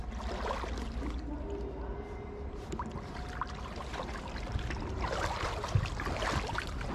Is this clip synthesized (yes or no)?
no